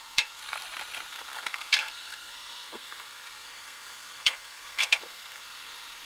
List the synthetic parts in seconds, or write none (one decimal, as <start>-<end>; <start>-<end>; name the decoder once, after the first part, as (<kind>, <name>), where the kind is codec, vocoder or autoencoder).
0.0-0.4 (codec, SNAC); 1.1-6.0